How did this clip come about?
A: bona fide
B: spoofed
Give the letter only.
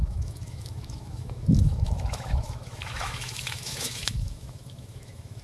B